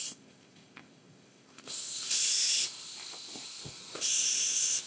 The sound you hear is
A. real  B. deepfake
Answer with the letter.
B